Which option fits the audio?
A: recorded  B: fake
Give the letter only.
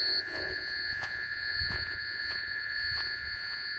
B